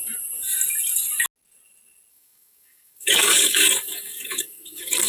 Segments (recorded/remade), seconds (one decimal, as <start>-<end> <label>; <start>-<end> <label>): 0.0-2.1 recorded; 2.1-5.1 remade

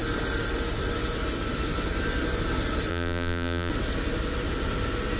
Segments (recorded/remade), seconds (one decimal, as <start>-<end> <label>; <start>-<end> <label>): 0.0-2.9 recorded; 2.9-3.7 remade; 3.7-5.2 recorded